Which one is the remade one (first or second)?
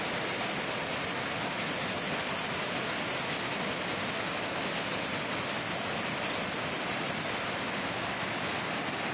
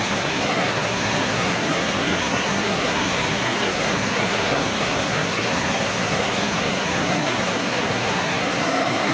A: second